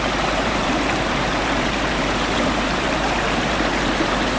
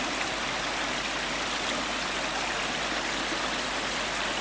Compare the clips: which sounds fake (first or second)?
first